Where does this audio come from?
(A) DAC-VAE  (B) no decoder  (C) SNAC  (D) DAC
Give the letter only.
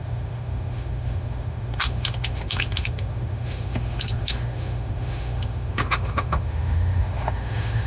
A